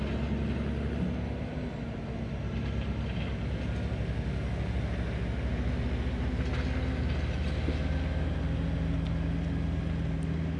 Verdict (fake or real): real